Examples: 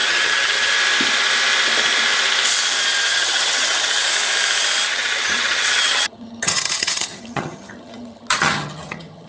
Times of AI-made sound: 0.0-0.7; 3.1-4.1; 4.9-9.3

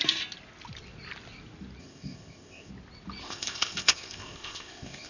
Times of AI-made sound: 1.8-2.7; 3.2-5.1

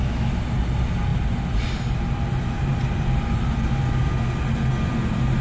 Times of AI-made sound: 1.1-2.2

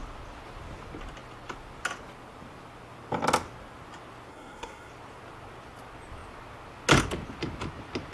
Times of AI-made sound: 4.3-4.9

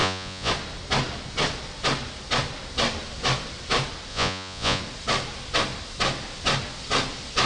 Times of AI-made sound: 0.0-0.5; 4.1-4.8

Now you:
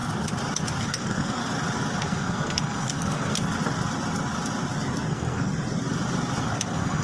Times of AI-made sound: 0.8-1.4; 2.0-3.4; 5.1-5.5; 6.4-7.0

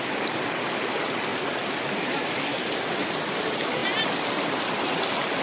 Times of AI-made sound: none

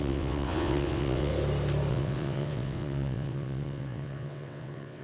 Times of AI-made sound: 0.0-1.3; 1.9-5.0